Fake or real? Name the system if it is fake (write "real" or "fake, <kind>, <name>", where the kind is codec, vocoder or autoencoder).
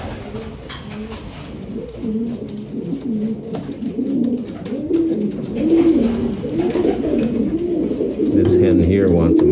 real